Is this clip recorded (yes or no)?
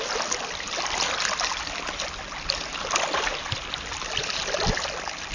yes